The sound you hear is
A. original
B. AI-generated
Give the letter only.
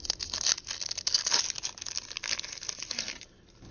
A